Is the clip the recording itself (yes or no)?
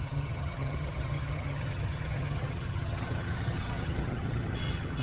no